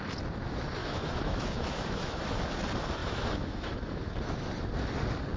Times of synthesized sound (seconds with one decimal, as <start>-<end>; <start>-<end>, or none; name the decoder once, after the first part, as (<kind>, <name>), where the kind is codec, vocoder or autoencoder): 0.8-2.4 (autoencoder, DAC-VAE); 3.0-4.0